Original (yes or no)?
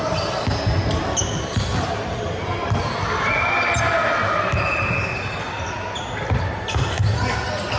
yes